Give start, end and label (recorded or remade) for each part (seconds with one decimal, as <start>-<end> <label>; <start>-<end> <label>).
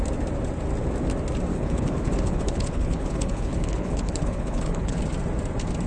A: 0.0-1.5 recorded; 1.5-5.0 remade; 5.0-5.9 recorded